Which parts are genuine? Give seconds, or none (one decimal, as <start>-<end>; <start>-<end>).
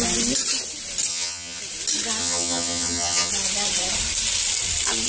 0.0-1.1; 1.6-2.2; 3.3-5.1